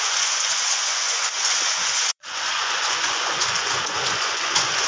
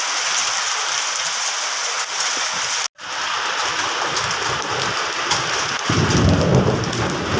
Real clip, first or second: second